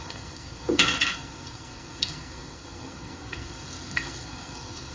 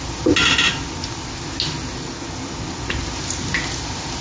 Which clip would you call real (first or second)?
second